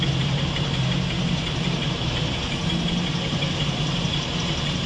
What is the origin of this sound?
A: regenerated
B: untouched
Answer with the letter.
A